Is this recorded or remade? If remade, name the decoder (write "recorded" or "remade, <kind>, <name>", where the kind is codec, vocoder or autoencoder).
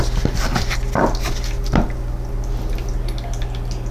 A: recorded